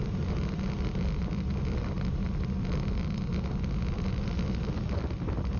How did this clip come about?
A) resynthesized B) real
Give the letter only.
A